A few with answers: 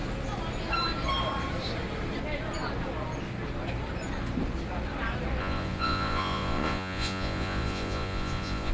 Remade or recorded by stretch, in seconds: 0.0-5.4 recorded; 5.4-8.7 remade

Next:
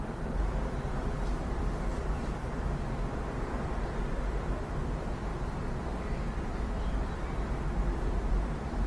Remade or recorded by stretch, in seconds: 0.0-5.3 remade; 5.3-5.8 recorded; 5.8-8.9 remade